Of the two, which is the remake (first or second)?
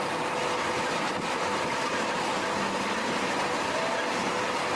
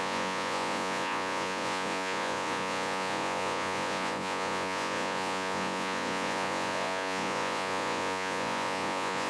second